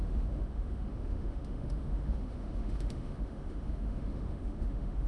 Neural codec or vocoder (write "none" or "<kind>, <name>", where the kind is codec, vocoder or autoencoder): autoencoder, DAC-VAE